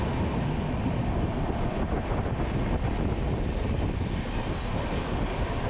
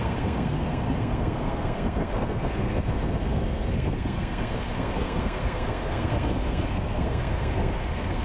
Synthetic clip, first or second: second